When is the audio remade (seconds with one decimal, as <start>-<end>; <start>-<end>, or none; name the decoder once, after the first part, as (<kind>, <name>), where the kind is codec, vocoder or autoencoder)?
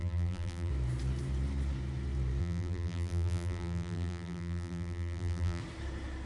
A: 0.0-0.7 (vocoder, BigVGAN v2); 2.4-5.6